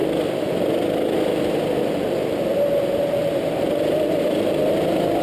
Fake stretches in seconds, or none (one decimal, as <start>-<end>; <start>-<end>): 0.5-2.5; 3.1-5.2

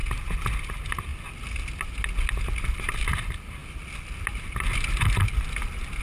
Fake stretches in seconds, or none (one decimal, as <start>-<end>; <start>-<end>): 0.6-1.1; 2.7-3.6

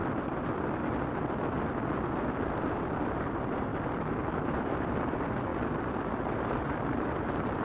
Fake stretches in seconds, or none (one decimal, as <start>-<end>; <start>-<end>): 2.6-3.7; 4.4-5.5; 6.3-7.6

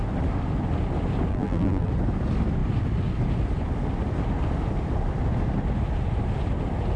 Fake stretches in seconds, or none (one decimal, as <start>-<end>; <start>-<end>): 1.3-1.9

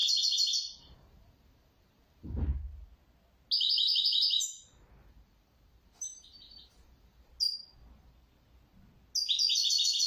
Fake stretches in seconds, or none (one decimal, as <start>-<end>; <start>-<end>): 0.8-2.5; 5.0-7.3; 9.7-10.1

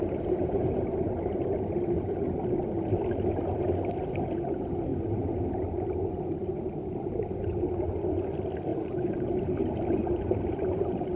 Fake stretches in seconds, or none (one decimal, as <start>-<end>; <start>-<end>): 8.7-9.4

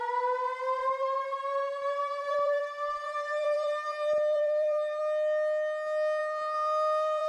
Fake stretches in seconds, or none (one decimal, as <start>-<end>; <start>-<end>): 0.8-5.0; 6.2-7.3

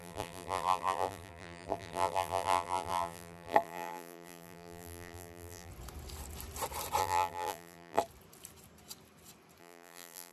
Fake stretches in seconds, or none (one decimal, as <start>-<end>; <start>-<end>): 0.0-5.7; 7.0-8.0; 9.6-10.3